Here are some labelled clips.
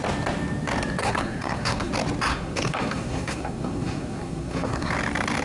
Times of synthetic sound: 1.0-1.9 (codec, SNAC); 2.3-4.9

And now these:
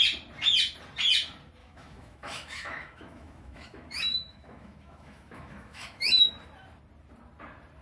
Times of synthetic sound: 1.6-6.3 (autoencoder, DAC-VAE)

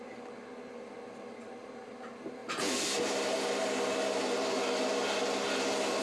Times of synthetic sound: none

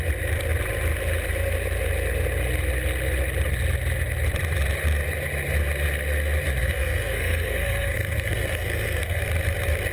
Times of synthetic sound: 6.6-9.2 (codec, SNAC)